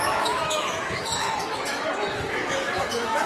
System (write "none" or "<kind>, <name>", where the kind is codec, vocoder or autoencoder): autoencoder, DAC-VAE